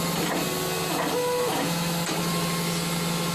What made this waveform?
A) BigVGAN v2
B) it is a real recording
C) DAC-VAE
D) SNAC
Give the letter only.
B